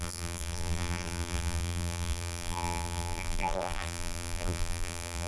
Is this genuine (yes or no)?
no